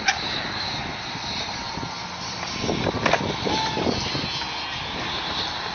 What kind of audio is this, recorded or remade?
recorded